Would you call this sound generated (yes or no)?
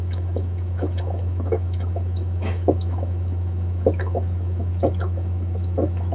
yes